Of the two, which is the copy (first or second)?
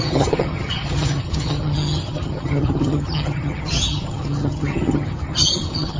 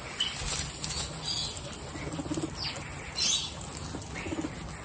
first